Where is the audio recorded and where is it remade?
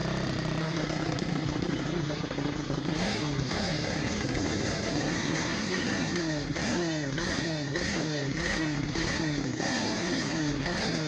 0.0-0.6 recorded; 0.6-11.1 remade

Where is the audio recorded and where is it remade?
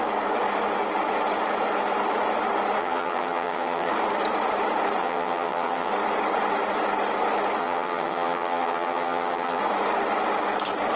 0.0-2.8 recorded; 2.8-3.9 remade; 3.9-5.0 recorded; 5.0-5.9 remade; 5.9-7.6 recorded; 7.6-9.6 remade; 9.6-11.0 recorded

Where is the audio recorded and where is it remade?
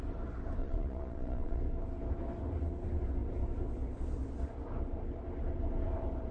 0.0-0.6 recorded; 0.6-1.6 remade; 1.6-6.3 recorded